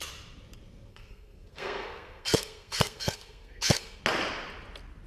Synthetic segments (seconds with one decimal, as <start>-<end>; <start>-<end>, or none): 0.9-4.0